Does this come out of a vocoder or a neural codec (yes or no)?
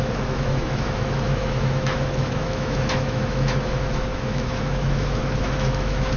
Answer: yes